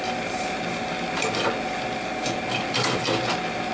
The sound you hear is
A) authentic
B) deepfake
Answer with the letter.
A